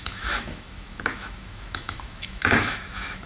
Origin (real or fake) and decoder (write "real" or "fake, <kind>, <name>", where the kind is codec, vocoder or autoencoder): fake, autoencoder, DAC-VAE